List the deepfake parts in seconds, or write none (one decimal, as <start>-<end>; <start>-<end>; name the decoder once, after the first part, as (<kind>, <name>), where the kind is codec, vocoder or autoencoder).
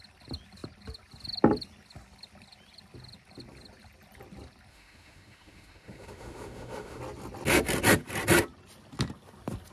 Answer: 4.7-7.0 (autoencoder, DAC-VAE)